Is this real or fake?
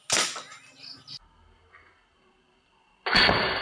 real